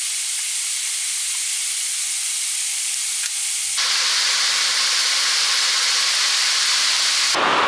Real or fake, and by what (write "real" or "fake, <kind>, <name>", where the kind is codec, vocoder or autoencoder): real